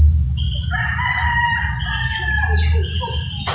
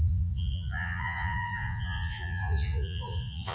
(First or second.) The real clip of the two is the first